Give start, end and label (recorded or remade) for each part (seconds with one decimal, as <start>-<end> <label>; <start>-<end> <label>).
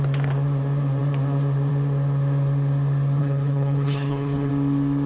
0.0-3.2 recorded; 3.2-4.5 remade; 4.5-5.1 recorded